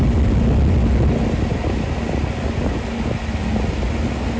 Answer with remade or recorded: recorded